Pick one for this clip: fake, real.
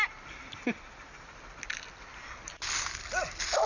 real